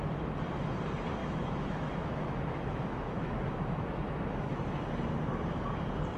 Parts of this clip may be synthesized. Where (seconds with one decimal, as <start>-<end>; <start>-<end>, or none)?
1.2-4.5